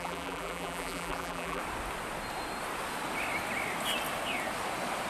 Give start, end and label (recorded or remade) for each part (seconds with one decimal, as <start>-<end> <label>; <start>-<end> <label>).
0.0-1.6 remade; 1.6-5.1 recorded